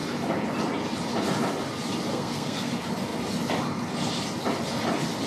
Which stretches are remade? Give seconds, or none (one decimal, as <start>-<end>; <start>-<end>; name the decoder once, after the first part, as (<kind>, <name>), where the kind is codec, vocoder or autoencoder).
2.1-2.7 (codec, SNAC)

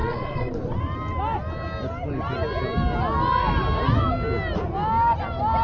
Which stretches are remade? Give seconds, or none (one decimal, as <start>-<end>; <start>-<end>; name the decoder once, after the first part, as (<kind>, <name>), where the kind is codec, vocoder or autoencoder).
0.0-0.8 (vocoder, Vocos)